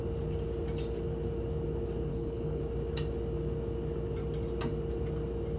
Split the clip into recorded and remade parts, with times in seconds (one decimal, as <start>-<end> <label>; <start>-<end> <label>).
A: 0.0-2.1 recorded; 2.1-2.6 remade; 2.6-5.6 recorded